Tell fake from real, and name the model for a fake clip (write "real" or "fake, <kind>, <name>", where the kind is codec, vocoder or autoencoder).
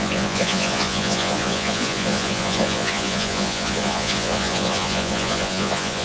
fake, vocoder, Vocos